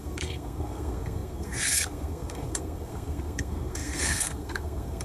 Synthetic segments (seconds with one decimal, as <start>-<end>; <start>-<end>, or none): 0.0-5.0